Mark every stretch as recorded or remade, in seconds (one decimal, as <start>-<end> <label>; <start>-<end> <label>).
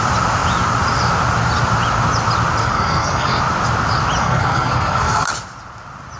0.0-2.6 recorded; 2.6-3.4 remade; 3.4-4.2 recorded; 4.2-5.3 remade; 5.3-6.2 recorded